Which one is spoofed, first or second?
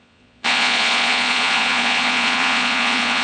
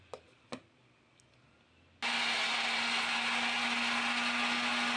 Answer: first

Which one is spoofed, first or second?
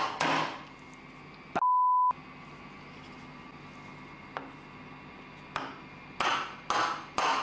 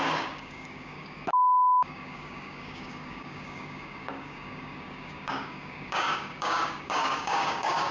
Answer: second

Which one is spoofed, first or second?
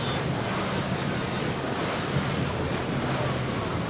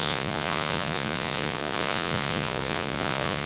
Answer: second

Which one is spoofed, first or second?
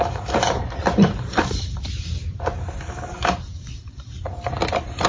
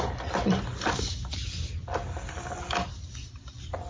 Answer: first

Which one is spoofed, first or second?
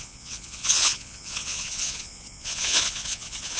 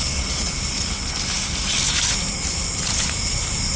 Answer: first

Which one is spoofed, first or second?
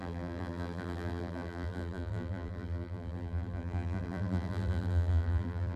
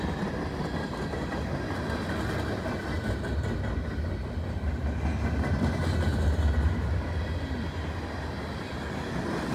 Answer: first